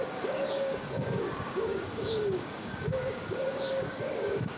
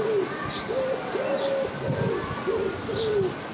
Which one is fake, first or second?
first